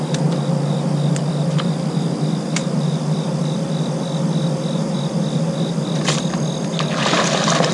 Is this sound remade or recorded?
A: recorded